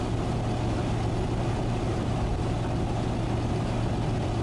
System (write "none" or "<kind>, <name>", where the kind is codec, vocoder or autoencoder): none